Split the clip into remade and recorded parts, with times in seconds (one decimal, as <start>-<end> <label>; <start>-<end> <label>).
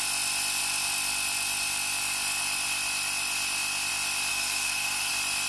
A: 0.0-4.3 recorded; 4.3-5.1 remade; 5.1-5.5 recorded